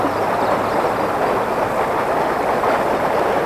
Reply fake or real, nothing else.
real